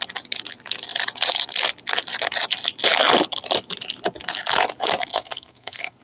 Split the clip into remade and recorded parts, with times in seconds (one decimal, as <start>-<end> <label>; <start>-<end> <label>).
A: 0.0-5.1 recorded; 5.1-6.0 remade